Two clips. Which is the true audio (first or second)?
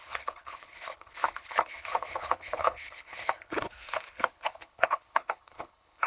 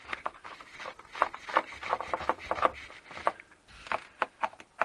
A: second